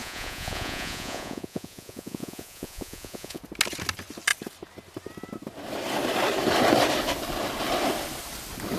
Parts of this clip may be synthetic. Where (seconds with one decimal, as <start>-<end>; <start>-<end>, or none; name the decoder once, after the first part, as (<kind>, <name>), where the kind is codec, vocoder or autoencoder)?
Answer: 0.0-3.4 (vocoder, Vocos)